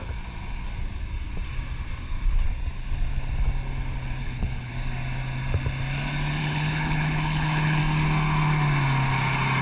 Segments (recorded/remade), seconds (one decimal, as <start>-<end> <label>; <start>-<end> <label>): 0.0-4.2 recorded; 4.2-4.7 remade; 4.7-6.4 recorded; 6.4-7.8 remade; 7.8-9.6 recorded